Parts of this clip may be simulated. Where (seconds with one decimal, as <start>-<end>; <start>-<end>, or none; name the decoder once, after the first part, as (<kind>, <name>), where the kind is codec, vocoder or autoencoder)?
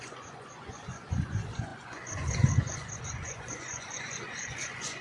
0.0-5.0 (vocoder, Vocos)